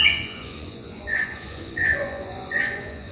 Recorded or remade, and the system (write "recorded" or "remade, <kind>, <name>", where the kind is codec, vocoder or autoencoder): remade, vocoder, Vocos